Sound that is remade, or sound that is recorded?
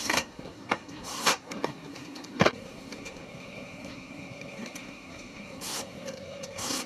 remade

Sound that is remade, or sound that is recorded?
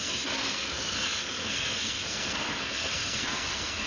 remade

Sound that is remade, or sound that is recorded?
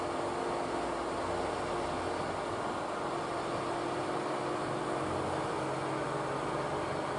recorded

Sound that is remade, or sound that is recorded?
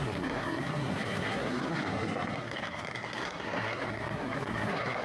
remade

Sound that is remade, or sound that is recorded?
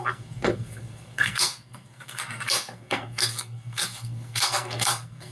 remade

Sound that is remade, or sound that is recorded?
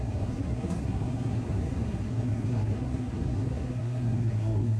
remade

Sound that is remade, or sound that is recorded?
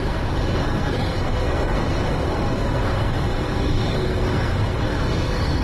remade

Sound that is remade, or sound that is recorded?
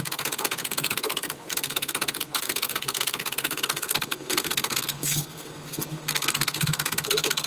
remade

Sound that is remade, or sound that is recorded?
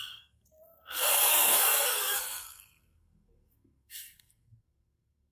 remade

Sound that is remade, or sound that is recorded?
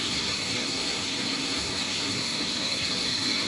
remade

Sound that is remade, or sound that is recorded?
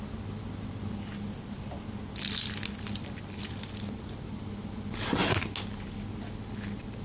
recorded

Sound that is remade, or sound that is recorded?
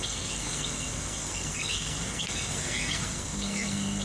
remade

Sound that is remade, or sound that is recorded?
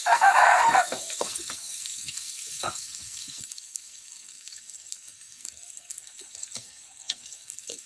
remade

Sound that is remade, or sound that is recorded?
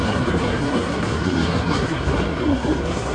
remade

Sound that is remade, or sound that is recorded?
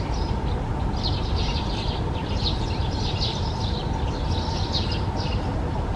recorded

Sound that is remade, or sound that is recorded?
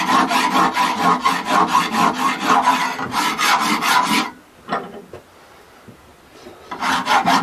recorded